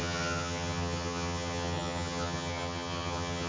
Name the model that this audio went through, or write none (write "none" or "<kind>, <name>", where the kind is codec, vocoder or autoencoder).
vocoder, HiFi-GAN